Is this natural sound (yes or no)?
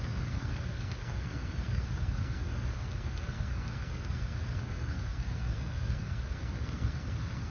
no